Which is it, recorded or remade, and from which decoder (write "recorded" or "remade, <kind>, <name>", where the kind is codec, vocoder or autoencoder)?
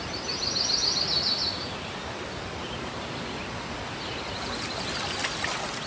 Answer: recorded